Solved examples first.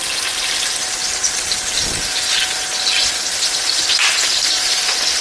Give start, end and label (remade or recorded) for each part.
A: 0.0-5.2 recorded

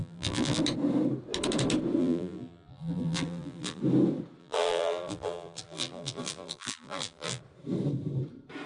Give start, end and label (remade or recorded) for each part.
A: 0.0-0.6 remade; 0.6-2.0 recorded; 2.0-3.8 remade; 3.8-4.4 recorded; 4.4-7.4 remade; 7.4-8.7 recorded